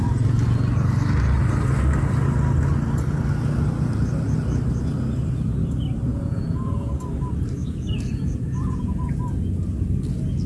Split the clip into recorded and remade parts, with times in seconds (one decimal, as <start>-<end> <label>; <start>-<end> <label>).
0.0-6.1 recorded; 6.1-7.0 remade; 7.0-7.6 recorded; 7.6-9.1 remade; 9.1-10.5 recorded

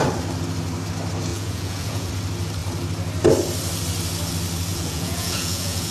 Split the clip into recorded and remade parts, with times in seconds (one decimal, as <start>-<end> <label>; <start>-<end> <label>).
0.0-1.3 recorded; 1.3-2.1 remade; 2.1-4.7 recorded; 4.7-5.9 remade

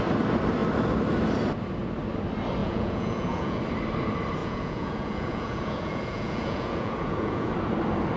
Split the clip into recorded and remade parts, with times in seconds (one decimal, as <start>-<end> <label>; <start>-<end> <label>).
0.0-2.6 recorded; 2.6-3.6 remade; 3.6-4.4 recorded; 4.4-7.5 remade; 7.5-8.2 recorded

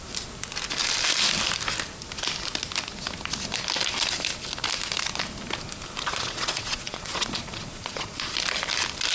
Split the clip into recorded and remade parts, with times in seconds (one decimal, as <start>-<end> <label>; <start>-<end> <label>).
0.0-6.1 recorded; 6.1-8.3 remade; 8.3-9.1 recorded

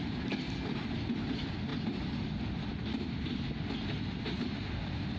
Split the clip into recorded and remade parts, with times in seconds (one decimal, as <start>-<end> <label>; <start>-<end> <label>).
0.0-5.2 recorded

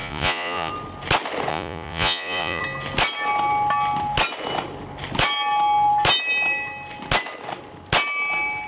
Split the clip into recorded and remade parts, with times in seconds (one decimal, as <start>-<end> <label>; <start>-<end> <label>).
0.0-0.7 remade; 0.7-1.5 recorded; 1.5-2.6 remade; 2.6-8.7 recorded